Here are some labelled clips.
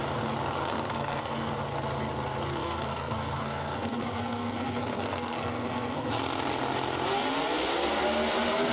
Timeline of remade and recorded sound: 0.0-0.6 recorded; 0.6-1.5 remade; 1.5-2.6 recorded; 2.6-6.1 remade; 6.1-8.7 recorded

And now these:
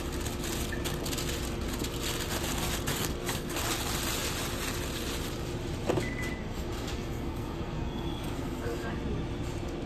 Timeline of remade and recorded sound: 0.0-2.9 recorded; 2.9-3.6 remade; 3.6-6.4 recorded; 6.4-8.9 remade; 8.9-9.9 recorded

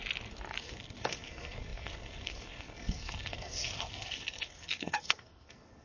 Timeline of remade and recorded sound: 0.0-0.6 recorded; 0.6-5.8 remade

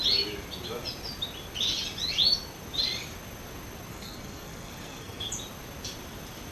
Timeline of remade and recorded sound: 0.0-3.9 recorded; 3.9-5.3 remade; 5.3-6.5 recorded

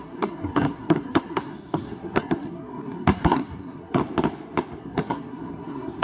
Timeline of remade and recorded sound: 0.0-4.0 remade; 4.0-4.8 recorded; 4.8-6.0 remade

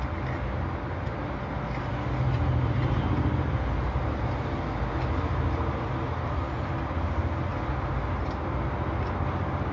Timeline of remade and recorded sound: 0.0-9.7 recorded